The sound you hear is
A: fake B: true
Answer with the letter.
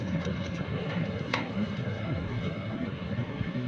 A